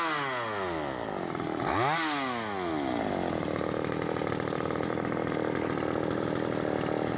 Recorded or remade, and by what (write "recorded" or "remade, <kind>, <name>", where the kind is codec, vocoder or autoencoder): recorded